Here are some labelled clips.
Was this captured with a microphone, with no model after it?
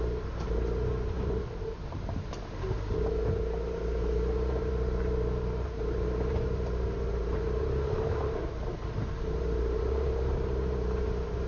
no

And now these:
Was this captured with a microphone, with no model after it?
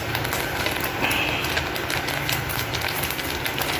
yes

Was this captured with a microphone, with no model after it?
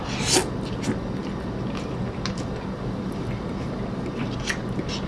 yes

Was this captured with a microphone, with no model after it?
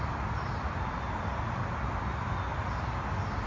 yes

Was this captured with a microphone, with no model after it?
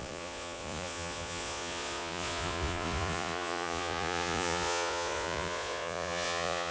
no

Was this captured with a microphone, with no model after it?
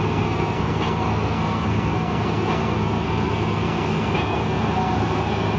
no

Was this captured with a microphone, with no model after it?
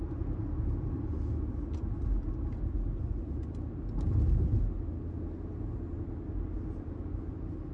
yes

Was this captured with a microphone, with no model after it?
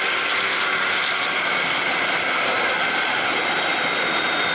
yes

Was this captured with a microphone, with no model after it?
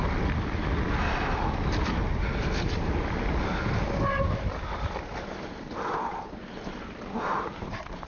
yes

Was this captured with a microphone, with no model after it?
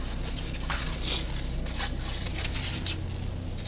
yes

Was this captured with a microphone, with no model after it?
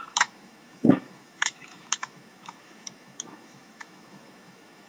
no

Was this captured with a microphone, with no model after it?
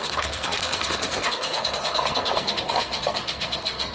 no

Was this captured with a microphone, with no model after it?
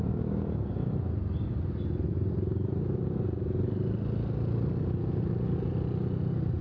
yes